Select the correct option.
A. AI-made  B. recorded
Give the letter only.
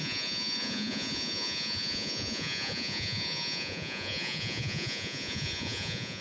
A